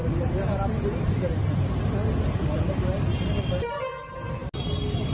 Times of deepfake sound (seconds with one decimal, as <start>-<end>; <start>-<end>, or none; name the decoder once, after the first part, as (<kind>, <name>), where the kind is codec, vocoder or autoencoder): none